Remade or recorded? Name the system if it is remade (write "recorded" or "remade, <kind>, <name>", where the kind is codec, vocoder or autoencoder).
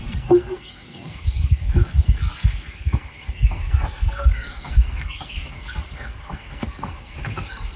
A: remade, codec, SNAC